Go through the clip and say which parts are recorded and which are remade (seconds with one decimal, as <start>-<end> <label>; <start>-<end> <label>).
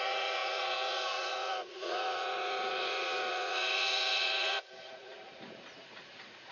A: 0.0-6.5 remade